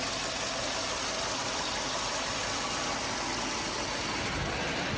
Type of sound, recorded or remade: recorded